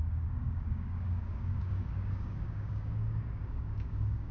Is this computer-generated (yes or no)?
yes